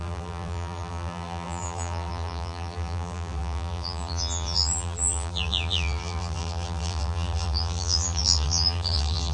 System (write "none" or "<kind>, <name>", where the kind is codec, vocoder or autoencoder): vocoder, BigVGAN v2